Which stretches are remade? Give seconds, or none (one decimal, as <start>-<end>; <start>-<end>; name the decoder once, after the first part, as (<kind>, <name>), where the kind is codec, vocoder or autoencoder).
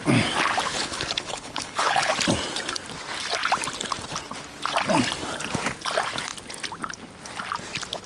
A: 0.7-2.1 (codec, HILCodec)